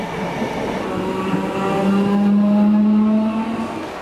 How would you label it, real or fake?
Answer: real